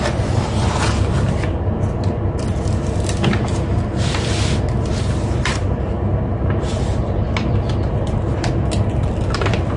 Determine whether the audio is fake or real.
real